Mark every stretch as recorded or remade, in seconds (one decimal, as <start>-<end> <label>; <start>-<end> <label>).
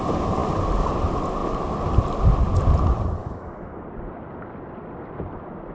0.0-3.2 recorded; 3.2-3.8 remade; 3.8-5.7 recorded